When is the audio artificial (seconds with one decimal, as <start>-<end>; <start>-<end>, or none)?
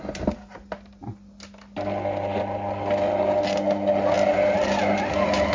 none